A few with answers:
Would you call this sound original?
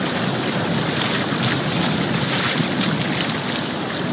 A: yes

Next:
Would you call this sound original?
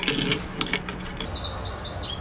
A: yes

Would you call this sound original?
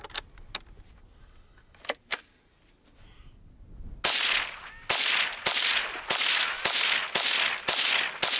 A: yes